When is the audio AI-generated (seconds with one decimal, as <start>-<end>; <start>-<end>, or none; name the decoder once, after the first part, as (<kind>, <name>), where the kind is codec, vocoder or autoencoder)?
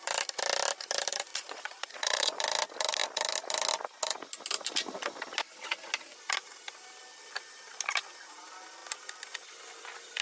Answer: 1.3-2.4 (vocoder, Vocos)